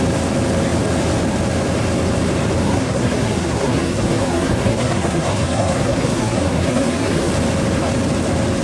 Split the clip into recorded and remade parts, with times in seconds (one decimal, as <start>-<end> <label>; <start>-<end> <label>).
0.0-2.6 recorded; 2.6-7.3 remade; 7.3-8.6 recorded